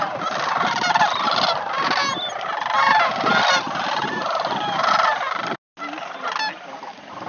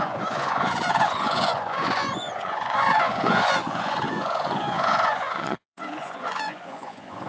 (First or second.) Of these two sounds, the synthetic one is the second